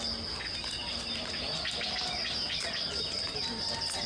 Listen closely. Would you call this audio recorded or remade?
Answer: recorded